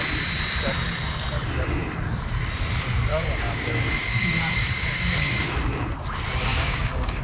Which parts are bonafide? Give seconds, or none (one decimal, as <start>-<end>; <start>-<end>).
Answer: 0.0-3.1; 5.5-6.5